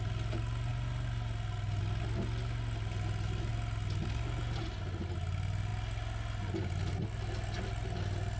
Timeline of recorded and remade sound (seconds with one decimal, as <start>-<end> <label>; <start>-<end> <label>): 0.0-8.4 recorded